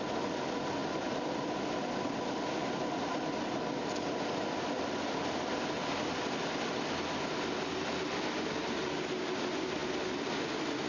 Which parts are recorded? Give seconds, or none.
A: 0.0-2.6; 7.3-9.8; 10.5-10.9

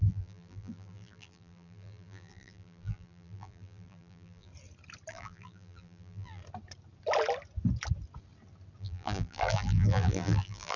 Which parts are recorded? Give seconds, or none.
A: 4.5-5.1; 6.4-8.8

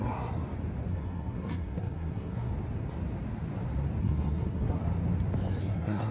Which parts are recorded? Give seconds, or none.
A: 0.4-0.9; 2.5-4.0; 4.8-5.6

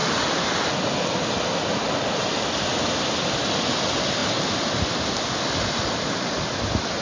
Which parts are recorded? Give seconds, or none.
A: 0.0-7.0

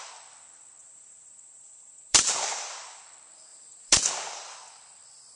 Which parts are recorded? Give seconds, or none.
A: 0.0-0.8; 3.0-3.5; 4.1-5.4

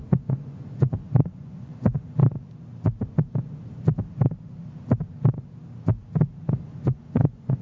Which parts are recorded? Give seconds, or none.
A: 2.2-6.7